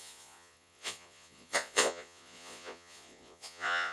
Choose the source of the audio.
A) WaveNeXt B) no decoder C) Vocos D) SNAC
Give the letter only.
C